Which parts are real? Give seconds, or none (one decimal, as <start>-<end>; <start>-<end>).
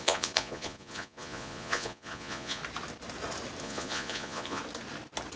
2.6-3.6; 4.6-5.4